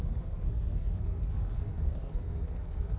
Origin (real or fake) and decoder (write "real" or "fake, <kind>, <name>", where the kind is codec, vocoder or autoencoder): fake, codec, SNAC